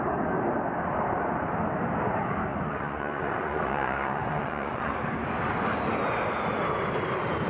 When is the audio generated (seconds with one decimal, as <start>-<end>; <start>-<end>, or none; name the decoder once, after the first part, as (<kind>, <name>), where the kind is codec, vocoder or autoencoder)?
2.5-4.9 (vocoder, Vocos)